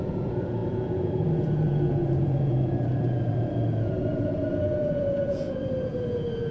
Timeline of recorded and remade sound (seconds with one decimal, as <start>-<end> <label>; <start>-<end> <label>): 0.0-6.5 remade